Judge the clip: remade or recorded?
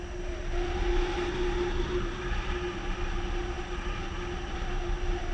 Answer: recorded